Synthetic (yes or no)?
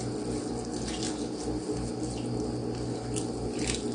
no